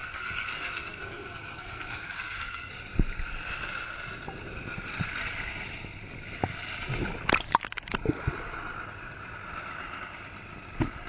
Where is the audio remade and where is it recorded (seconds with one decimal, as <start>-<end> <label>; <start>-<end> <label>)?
0.0-2.7 remade; 2.7-11.1 recorded